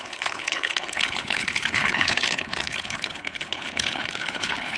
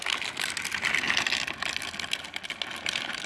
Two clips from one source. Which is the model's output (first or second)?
first